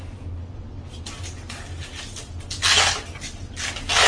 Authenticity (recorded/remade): recorded